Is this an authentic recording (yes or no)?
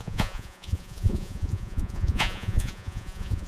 no